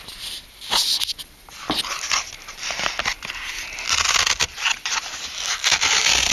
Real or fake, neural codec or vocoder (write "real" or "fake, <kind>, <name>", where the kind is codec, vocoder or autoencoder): real